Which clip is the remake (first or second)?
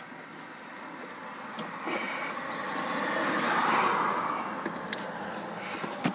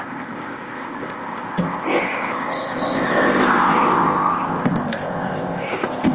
second